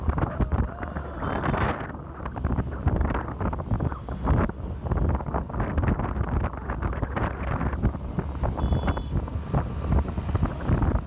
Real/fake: real